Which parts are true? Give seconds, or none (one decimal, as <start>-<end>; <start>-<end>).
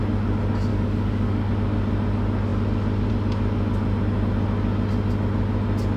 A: 0.0-0.7; 1.5-6.0